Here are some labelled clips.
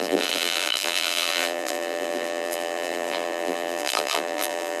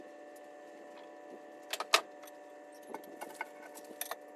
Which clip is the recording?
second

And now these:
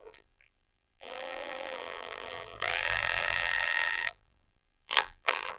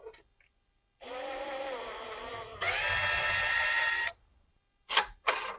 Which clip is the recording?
second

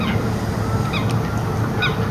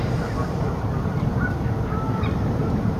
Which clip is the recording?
first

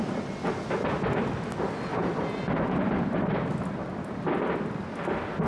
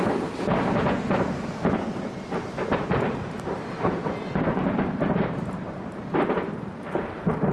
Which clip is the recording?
first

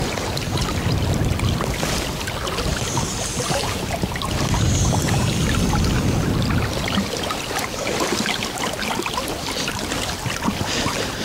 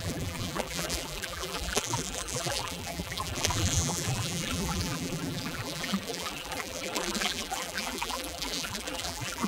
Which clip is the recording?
first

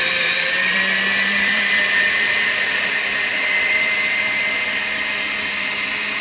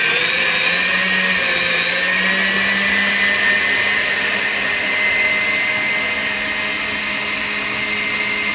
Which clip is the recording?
second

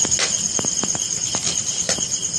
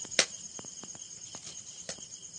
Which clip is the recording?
first